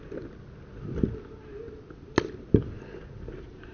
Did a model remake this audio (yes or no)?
no